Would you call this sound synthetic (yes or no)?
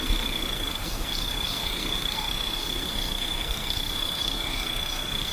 yes